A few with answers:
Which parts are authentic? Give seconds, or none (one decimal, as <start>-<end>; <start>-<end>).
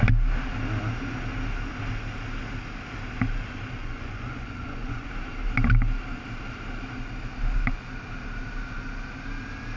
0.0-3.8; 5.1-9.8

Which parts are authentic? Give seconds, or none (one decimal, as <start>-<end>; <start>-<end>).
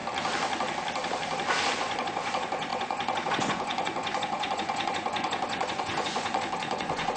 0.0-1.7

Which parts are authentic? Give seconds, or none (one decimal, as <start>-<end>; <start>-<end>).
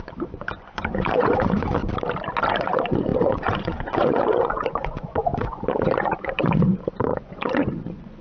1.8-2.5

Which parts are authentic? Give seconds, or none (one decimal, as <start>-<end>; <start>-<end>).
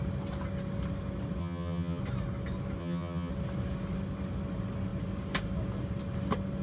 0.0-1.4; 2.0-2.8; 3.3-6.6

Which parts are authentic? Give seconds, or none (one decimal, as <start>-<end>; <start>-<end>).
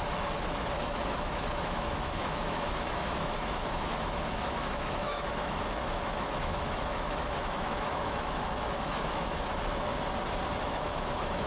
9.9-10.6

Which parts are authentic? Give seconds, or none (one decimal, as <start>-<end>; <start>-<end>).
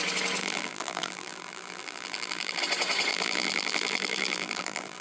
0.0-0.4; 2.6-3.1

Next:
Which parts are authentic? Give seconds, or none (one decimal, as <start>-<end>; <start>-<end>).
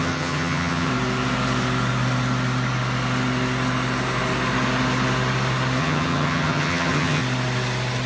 0.9-5.8; 7.2-8.1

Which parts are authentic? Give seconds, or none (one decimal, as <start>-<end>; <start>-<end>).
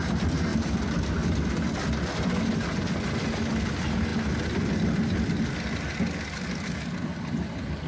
0.0-7.9